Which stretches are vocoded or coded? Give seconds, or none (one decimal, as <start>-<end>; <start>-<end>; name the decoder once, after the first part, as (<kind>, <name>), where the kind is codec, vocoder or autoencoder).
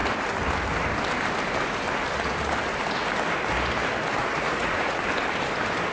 4.2-5.0 (vocoder, Vocos)